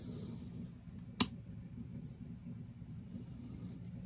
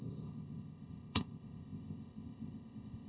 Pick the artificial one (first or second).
second